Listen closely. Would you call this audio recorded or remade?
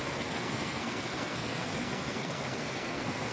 remade